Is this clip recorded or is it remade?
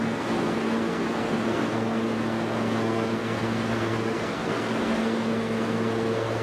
remade